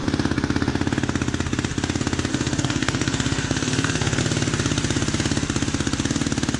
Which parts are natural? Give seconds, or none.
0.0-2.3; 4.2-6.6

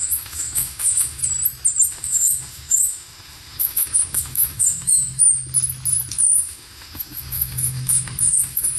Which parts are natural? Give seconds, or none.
1.2-1.9; 5.2-6.1

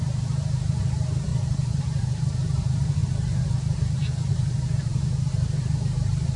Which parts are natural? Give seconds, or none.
3.0-4.3

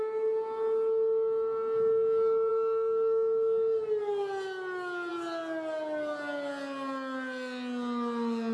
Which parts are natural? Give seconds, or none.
0.0-8.5

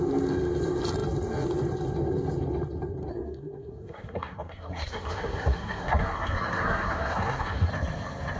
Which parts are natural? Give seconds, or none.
0.0-3.1; 7.7-8.4

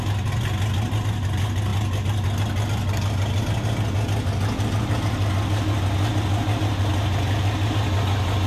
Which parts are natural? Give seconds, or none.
0.0-8.5

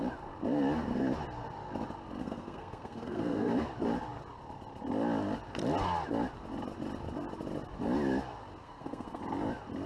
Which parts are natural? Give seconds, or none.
0.0-2.2; 3.5-8.6; 9.2-9.9